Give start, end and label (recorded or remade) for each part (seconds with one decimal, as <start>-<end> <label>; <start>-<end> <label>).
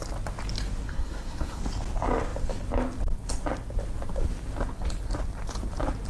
0.0-0.9 recorded; 0.9-1.6 remade; 1.6-6.1 recorded